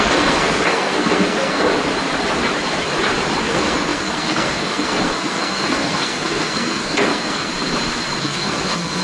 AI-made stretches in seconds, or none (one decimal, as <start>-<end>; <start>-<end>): 0.0-1.7; 3.5-7.5; 8.2-9.0